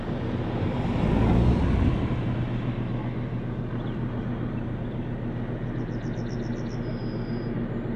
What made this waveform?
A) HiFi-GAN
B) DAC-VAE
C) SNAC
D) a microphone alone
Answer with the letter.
D